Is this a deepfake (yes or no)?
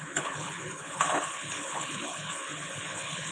yes